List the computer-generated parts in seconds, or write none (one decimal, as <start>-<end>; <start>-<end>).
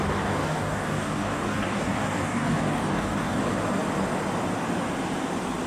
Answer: 0.0-3.4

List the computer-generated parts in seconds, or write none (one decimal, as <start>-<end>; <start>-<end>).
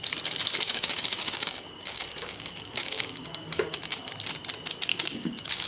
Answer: 0.7-4.1; 4.9-5.7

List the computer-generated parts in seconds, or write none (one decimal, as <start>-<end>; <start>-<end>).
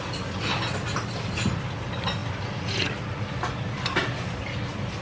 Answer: none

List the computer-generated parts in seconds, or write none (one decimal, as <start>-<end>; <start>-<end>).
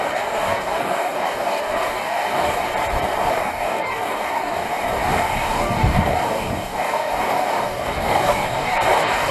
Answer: 0.0-2.7; 3.3-9.3